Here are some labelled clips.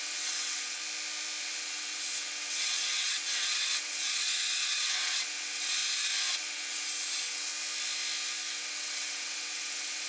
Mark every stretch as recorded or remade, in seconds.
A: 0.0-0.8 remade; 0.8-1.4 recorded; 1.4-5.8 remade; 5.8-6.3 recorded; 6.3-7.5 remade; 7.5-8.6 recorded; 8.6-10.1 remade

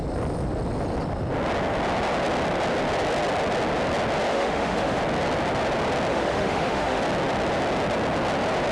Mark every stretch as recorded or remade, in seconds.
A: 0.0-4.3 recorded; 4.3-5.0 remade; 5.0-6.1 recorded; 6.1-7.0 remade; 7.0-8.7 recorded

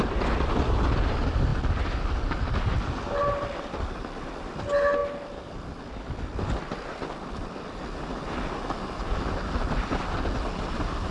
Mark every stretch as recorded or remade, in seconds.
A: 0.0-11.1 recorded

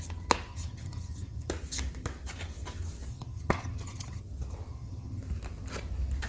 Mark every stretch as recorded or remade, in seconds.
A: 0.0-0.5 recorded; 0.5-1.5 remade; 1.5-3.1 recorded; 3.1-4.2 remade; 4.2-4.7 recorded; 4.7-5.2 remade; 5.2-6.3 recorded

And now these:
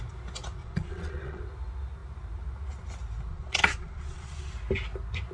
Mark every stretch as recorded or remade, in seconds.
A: 0.0-0.6 recorded; 0.6-1.4 remade; 1.4-3.3 recorded; 3.3-4.5 remade; 4.5-5.3 recorded

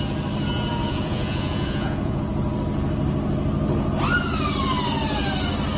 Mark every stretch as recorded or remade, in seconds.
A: 0.0-0.8 recorded; 0.8-2.2 remade; 2.2-5.8 recorded

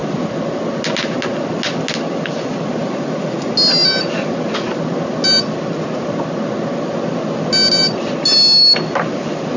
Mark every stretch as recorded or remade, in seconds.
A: 0.0-2.8 recorded; 2.8-3.5 remade; 3.5-9.6 recorded

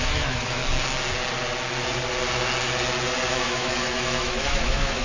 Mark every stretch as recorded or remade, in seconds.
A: 0.0-0.6 remade; 0.6-3.3 recorded; 3.3-5.0 remade